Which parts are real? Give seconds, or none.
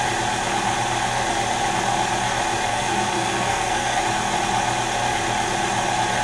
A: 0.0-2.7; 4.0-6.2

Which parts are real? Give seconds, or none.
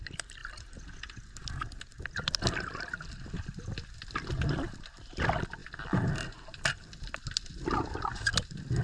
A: 0.0-8.8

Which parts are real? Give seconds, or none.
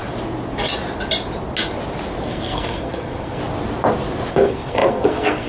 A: 0.0-2.2; 3.4-4.3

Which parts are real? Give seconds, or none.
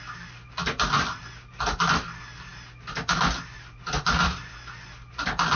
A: 0.0-5.6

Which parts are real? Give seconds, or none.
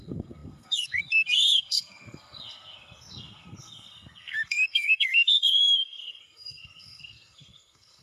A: none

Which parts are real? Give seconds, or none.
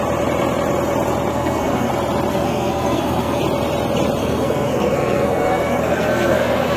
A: 0.0-1.3; 1.9-2.3; 3.4-4.2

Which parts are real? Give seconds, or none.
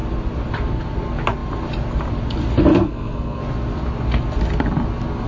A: 0.0-2.7; 3.4-5.3